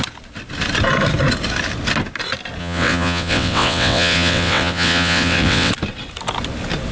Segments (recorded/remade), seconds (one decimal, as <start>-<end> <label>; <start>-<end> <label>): 0.0-2.6 recorded; 2.6-5.7 remade; 5.7-6.9 recorded